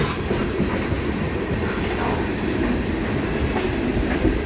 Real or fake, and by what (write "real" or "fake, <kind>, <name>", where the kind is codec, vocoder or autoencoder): real